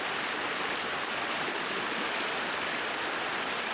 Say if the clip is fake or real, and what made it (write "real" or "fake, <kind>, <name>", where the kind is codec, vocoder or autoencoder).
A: real